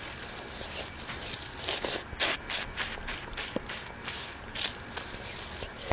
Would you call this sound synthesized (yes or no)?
no